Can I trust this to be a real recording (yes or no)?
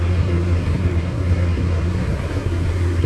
no